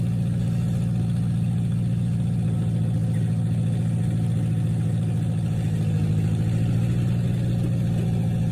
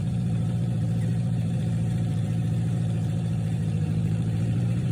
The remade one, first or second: second